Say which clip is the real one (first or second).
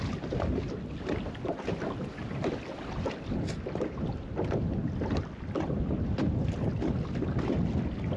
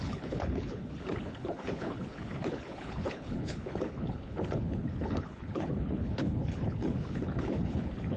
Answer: first